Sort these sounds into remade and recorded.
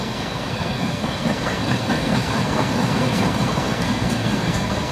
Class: remade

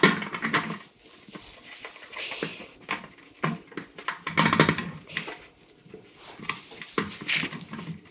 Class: recorded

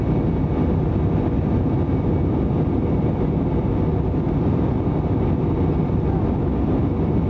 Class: recorded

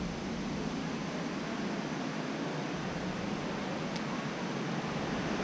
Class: recorded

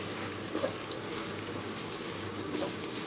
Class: remade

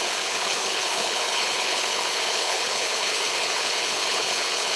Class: remade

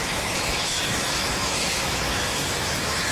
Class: remade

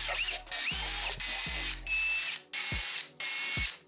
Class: recorded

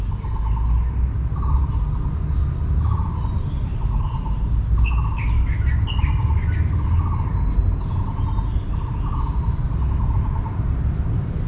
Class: recorded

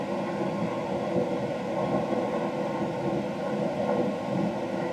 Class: recorded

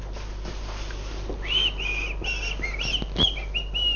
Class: recorded